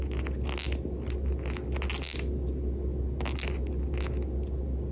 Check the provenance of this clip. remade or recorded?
recorded